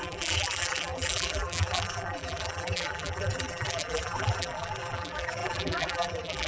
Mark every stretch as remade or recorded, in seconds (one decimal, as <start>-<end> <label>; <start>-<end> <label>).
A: 0.0-6.5 remade

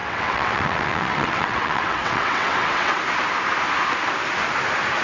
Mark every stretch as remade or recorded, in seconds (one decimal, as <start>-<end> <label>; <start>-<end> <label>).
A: 0.0-3.0 remade; 3.0-5.0 recorded

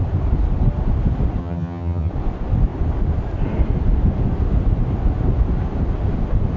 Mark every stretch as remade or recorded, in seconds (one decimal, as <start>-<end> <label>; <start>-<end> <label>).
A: 0.0-1.4 recorded; 1.4-2.1 remade; 2.1-6.6 recorded

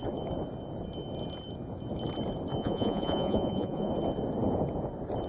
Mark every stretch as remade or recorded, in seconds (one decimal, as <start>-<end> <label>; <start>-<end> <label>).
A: 0.0-2.6 recorded; 2.6-3.9 remade; 3.9-5.3 recorded

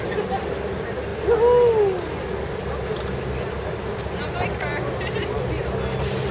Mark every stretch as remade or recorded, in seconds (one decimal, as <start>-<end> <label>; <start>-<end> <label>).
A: 0.0-6.3 recorded